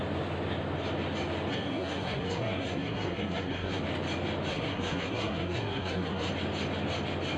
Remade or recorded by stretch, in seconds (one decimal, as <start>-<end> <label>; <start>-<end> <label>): 0.0-1.5 recorded; 1.5-3.8 remade; 3.8-4.5 recorded; 4.5-6.3 remade; 6.3-7.4 recorded